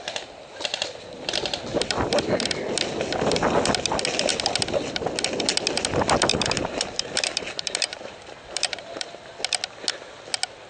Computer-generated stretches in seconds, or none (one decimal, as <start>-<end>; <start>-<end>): 1.7-2.6; 6.3-9.1